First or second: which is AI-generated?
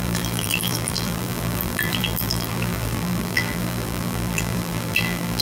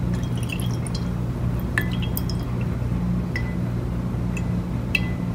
first